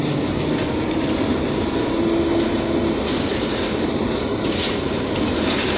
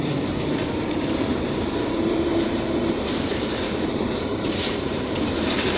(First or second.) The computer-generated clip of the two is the second